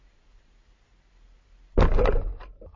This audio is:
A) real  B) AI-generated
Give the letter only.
A